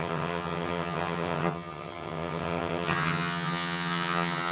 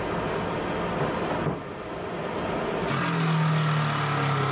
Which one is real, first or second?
second